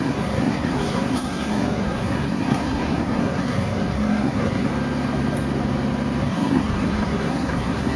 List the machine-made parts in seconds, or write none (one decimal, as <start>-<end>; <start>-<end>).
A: 0.0-4.7; 6.2-8.0